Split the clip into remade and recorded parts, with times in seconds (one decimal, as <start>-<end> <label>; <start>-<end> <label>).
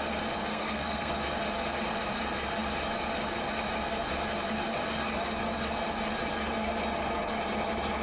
0.0-0.5 recorded; 0.5-1.1 remade; 1.1-8.0 recorded